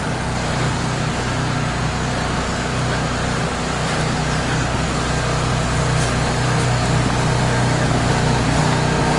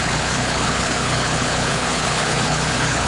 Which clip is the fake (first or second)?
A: second